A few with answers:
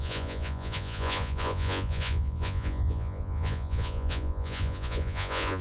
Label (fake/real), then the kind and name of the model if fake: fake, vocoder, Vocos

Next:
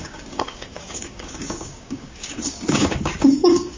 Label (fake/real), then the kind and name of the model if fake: fake, codec, DAC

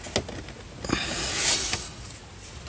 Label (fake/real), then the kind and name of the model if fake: real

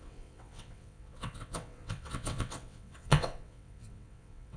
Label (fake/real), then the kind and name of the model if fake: fake, vocoder, WaveNeXt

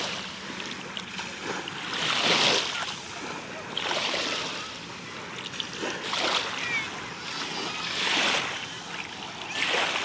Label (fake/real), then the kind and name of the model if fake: real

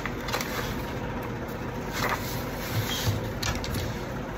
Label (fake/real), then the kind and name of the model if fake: real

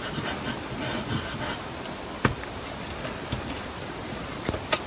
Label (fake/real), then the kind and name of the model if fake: real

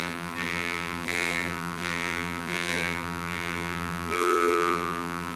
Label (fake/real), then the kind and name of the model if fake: fake, vocoder, BigVGAN v2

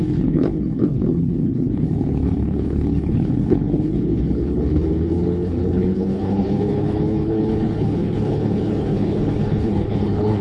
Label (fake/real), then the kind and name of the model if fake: fake, codec, HILCodec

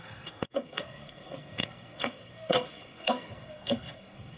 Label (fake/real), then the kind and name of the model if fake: fake, codec, SNAC